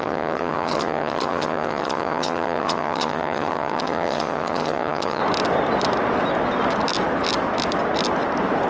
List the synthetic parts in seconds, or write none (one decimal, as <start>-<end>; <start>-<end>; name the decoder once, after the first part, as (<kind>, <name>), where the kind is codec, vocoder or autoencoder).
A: 0.0-5.2 (vocoder, HiFi-GAN)